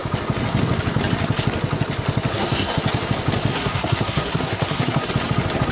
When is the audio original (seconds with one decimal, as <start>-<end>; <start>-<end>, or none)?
0.0-2.3; 2.8-3.5; 5.1-5.7